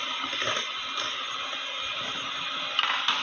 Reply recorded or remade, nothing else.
recorded